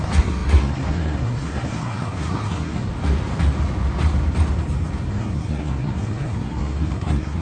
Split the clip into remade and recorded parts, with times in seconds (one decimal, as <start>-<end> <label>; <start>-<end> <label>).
0.0-2.9 remade; 2.9-5.1 recorded; 5.1-7.4 remade